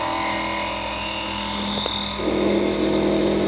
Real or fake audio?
real